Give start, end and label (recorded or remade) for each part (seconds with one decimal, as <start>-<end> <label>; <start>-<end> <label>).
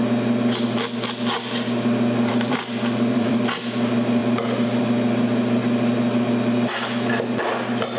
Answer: 0.0-2.3 recorded; 2.3-3.4 remade; 3.4-4.2 recorded; 4.2-4.8 remade; 4.8-8.0 recorded